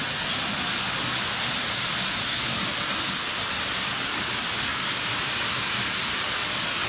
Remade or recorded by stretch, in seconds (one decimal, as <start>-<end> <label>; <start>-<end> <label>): 0.0-6.9 recorded

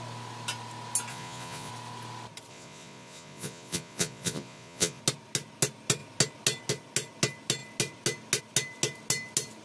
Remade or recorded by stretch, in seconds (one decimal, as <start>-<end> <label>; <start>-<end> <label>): 0.0-1.1 recorded; 1.1-1.7 remade; 1.7-2.5 recorded; 2.5-5.0 remade; 5.0-9.6 recorded

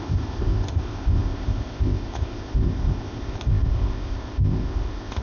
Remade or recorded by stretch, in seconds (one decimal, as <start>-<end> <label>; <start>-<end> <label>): 0.0-5.2 remade

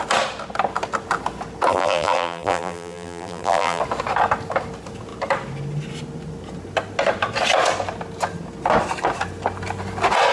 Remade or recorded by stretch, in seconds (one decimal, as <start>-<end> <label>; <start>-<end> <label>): 0.0-1.7 recorded; 1.7-3.8 remade; 3.8-10.3 recorded

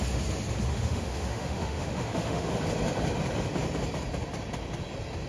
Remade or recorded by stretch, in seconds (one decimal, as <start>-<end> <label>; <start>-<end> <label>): 0.0-0.7 recorded; 0.7-2.6 remade; 2.6-5.3 recorded

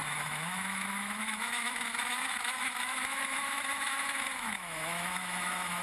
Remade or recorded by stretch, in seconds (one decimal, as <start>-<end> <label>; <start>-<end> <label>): 0.0-5.8 remade

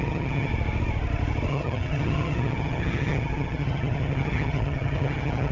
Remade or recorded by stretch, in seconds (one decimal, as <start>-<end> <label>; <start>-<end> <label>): 0.0-0.5 remade; 0.5-1.5 recorded; 1.5-5.5 remade